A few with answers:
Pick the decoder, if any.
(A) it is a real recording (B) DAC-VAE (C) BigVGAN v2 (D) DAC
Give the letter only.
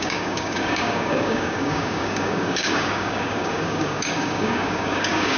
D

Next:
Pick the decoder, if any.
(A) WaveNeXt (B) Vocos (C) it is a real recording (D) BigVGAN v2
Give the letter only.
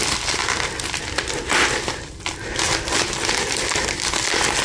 C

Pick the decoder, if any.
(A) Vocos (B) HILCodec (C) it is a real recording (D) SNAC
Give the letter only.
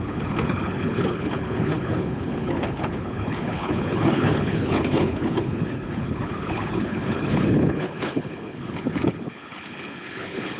B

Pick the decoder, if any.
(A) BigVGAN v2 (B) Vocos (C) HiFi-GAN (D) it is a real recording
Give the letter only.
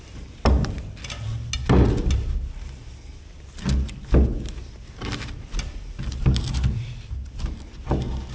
D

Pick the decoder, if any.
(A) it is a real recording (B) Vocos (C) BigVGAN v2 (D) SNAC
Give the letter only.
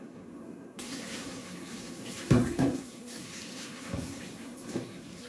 D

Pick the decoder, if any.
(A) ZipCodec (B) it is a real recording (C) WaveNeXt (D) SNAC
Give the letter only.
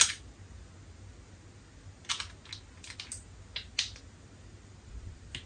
B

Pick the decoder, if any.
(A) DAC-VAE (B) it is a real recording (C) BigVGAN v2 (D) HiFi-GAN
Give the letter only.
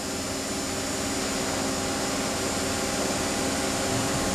B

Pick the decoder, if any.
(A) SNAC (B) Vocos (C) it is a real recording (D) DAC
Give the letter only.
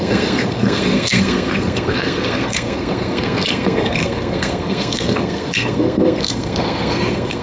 A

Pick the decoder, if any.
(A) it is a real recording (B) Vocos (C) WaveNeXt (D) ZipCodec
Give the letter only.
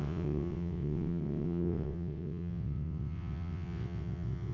C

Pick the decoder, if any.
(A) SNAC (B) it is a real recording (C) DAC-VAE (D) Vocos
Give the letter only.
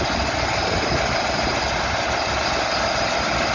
B